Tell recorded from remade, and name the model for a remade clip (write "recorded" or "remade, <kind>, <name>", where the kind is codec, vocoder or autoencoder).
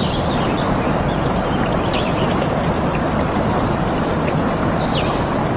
recorded